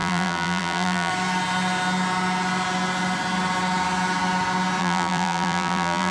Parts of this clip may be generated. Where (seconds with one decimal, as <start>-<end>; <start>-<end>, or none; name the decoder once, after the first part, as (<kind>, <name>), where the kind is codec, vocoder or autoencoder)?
0.0-1.1 (vocoder, BigVGAN v2); 4.8-6.1